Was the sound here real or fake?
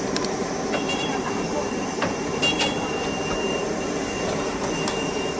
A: fake